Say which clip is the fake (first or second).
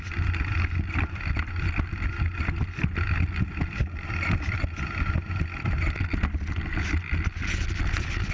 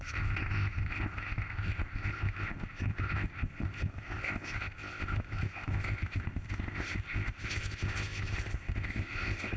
second